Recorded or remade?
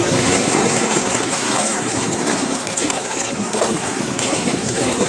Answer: remade